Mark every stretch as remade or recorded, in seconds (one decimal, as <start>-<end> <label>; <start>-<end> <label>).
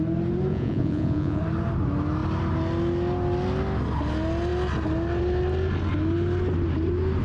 0.0-0.5 recorded; 0.5-1.4 remade; 1.4-7.2 recorded